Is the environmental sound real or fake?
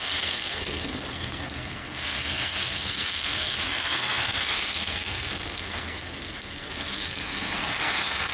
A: fake